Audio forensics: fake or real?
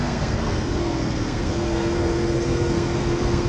fake